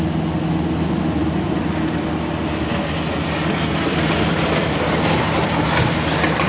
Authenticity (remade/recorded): recorded